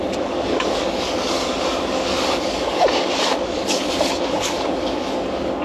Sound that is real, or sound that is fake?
fake